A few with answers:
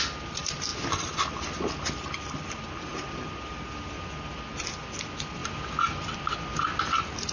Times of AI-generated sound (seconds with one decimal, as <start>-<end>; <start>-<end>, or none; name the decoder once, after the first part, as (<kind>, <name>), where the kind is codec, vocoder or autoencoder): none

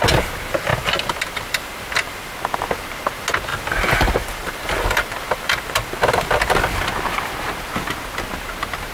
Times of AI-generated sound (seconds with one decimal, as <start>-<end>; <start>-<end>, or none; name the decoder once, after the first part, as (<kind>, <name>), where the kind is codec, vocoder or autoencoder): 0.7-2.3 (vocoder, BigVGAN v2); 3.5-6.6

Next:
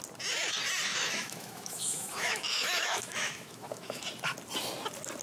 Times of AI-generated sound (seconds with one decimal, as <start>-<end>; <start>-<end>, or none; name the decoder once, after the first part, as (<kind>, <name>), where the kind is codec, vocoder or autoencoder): 0.9-4.0 (autoencoder, DAC-VAE)